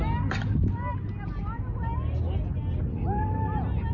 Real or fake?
real